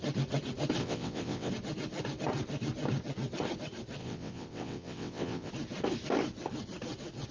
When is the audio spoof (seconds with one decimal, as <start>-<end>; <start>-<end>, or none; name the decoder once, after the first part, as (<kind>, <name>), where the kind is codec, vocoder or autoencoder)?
0.8-1.5 (vocoder, WaveNeXt); 4.0-5.5